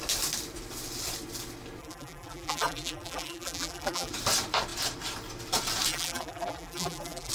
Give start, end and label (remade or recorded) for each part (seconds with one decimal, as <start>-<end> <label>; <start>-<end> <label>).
0.0-1.8 recorded; 1.8-4.1 remade; 4.1-5.9 recorded; 5.9-7.3 remade